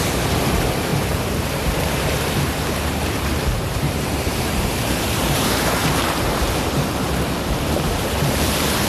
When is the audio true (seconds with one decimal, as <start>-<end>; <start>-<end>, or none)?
none